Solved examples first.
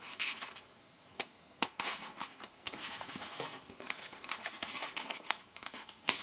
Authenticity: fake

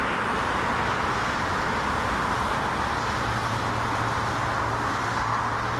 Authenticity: real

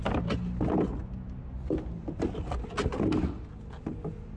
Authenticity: real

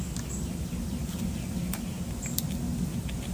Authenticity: real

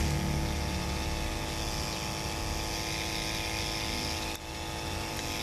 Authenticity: real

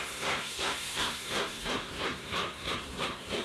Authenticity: fake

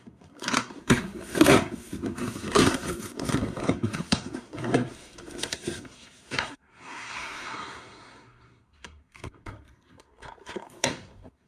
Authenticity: fake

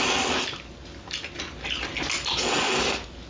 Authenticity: real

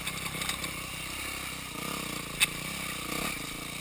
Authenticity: real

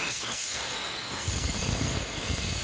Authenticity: fake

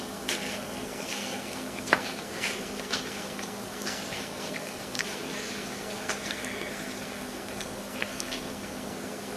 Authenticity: fake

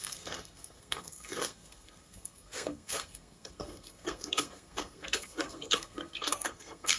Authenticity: fake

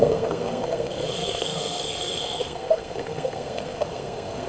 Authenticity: fake